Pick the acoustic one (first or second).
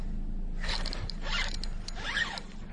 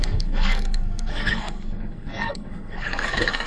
first